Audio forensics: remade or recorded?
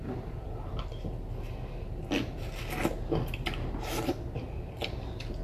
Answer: recorded